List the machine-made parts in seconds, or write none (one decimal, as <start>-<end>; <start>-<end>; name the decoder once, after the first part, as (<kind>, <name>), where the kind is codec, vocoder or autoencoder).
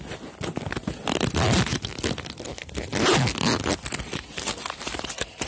none